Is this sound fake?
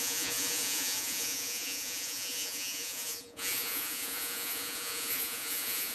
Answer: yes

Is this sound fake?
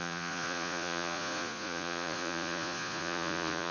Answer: yes